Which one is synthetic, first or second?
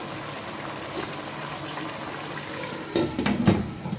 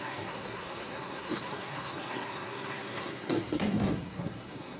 second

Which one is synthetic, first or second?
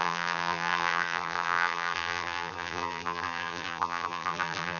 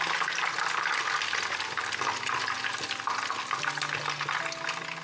first